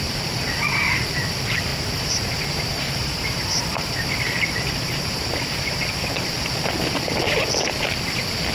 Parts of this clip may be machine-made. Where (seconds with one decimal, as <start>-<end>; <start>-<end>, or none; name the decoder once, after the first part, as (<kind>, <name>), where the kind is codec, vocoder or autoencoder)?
1.7-5.7 (vocoder, BigVGAN v2)